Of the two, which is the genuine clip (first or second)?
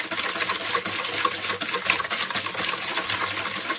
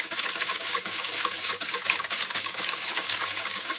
first